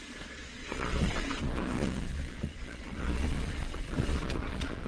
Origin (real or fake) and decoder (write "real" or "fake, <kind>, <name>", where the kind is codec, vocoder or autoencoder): fake, vocoder, Vocos